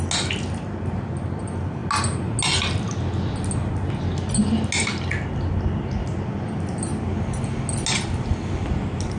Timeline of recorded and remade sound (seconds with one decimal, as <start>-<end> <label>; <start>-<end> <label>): 0.0-9.2 recorded